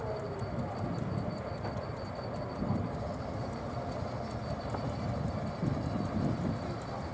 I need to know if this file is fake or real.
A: real